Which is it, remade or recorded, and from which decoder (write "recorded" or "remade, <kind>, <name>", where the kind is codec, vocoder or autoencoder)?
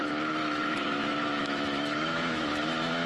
remade, autoencoder, DAC-VAE